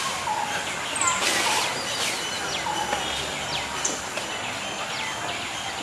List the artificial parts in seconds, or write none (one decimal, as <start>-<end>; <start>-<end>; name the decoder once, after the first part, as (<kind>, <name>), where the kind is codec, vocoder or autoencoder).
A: none

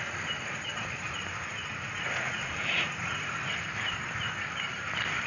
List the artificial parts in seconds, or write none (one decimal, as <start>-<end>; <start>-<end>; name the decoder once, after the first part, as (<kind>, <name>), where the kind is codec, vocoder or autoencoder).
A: 1.6-3.3 (vocoder, Vocos)

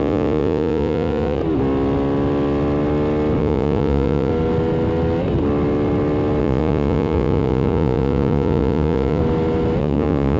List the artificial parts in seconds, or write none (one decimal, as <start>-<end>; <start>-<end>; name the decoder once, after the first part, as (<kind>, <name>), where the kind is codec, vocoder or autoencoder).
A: 0.0-1.4 (vocoder, Vocos); 3.4-4.3; 6.4-9.2; 9.8-10.4

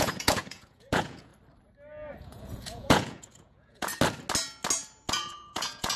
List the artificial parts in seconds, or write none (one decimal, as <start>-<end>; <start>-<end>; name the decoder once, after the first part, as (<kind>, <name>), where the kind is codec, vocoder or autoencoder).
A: 0.0-1.3 (vocoder, Vocos); 2.2-3.9; 5.1-6.0